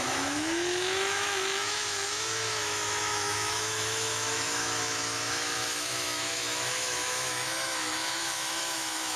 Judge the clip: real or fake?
fake